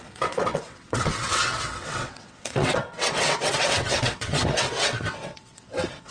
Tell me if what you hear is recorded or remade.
remade